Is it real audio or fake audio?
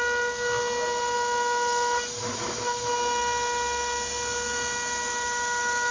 real